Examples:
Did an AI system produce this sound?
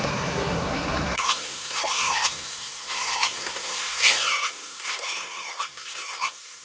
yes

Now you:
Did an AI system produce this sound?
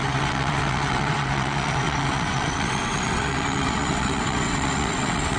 yes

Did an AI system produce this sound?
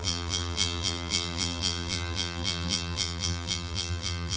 yes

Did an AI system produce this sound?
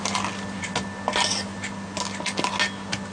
no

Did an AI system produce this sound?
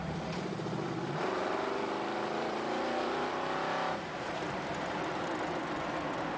yes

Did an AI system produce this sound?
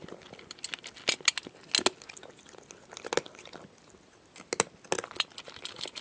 no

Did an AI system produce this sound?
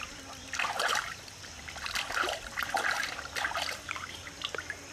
no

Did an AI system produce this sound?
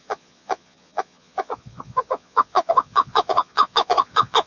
yes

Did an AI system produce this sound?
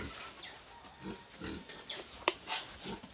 no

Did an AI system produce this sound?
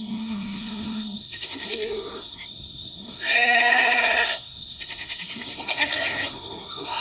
yes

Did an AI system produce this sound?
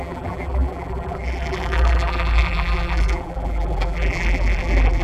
yes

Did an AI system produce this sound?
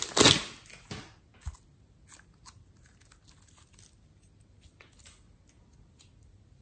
no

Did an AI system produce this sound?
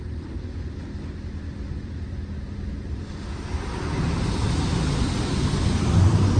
no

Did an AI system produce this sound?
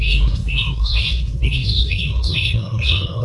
yes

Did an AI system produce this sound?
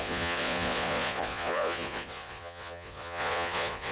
yes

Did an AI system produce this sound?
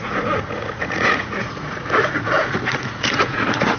yes